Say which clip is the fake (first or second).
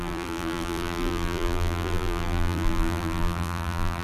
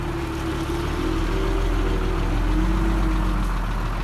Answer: first